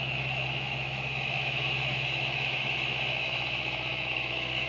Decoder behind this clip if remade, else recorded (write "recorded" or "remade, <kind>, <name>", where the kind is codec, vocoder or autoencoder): remade, autoencoder, DAC-VAE